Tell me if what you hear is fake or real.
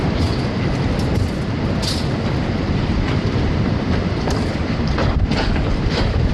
real